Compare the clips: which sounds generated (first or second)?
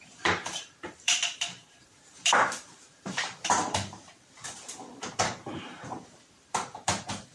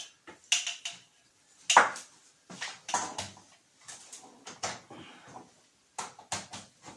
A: first